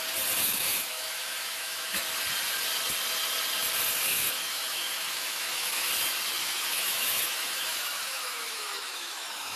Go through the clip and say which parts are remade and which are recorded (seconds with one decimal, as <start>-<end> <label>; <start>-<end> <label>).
0.0-0.4 recorded; 0.4-2.0 remade; 2.0-4.1 recorded; 4.1-5.9 remade; 5.9-6.4 recorded; 6.4-9.6 remade